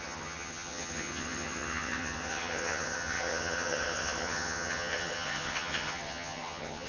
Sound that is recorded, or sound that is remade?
remade